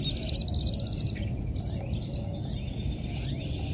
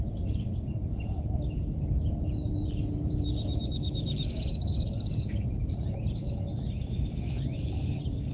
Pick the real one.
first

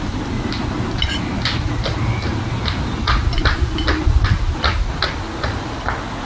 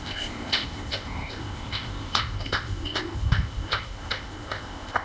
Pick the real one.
first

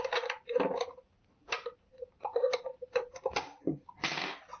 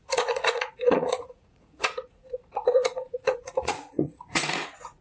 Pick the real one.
first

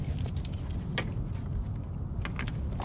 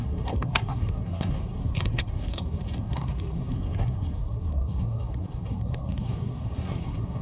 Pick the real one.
first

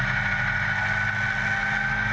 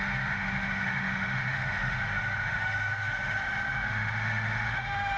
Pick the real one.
first